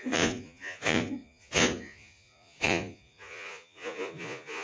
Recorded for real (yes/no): no